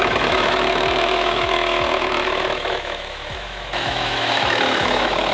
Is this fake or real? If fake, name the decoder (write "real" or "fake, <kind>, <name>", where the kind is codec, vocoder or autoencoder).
fake, autoencoder, DAC-VAE